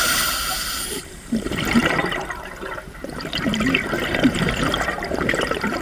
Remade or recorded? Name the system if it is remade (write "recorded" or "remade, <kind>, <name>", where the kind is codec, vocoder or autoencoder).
remade, vocoder, BigVGAN v2